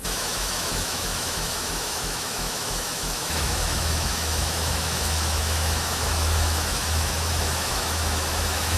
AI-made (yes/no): yes